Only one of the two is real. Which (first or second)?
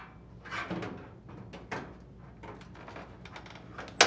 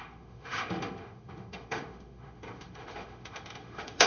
first